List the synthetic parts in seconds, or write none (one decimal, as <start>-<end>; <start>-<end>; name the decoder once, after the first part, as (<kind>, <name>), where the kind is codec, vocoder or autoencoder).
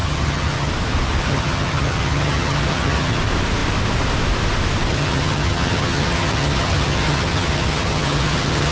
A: 0.0-0.7 (vocoder, HiFi-GAN); 1.2-3.2; 4.9-8.7